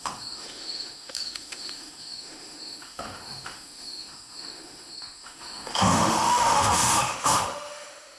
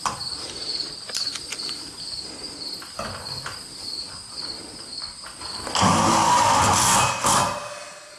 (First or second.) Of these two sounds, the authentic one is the second